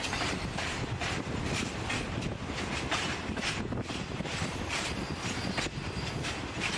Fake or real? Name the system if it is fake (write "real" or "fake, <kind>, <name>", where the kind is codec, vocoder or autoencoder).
real